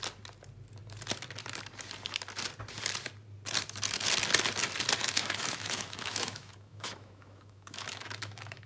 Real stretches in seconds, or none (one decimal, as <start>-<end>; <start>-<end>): 0.0-5.0